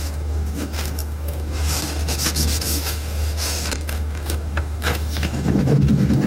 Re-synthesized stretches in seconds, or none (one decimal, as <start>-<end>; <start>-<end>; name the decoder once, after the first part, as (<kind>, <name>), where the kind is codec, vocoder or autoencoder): 0.0-6.3 (codec, DAC)